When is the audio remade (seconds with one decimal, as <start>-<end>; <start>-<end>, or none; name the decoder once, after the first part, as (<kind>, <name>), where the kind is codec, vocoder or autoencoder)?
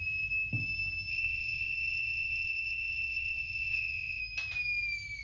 1.1-4.2 (vocoder, WaveNeXt)